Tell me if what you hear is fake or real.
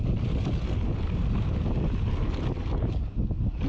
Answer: real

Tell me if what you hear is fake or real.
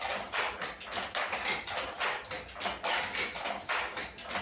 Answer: real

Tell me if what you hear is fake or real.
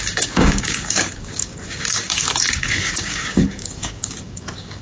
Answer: fake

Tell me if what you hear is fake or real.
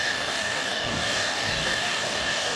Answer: fake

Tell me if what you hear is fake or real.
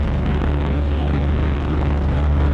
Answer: fake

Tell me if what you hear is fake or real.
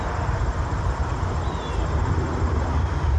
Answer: real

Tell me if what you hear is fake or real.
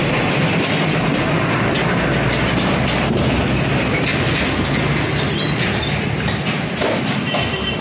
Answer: real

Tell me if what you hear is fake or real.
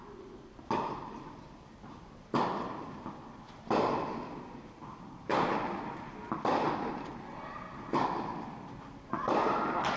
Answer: real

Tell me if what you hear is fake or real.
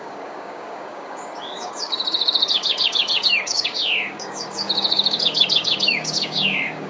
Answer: fake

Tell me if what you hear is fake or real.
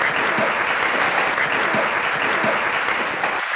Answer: real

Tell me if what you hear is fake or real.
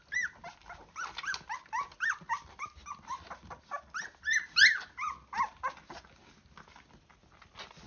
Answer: real